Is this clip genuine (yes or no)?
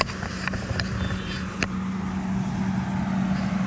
yes